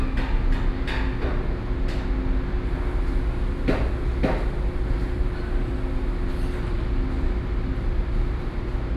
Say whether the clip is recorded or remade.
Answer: recorded